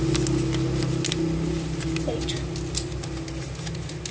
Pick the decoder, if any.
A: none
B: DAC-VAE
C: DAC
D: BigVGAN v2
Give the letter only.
A